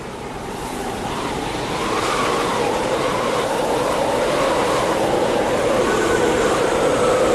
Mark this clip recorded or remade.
remade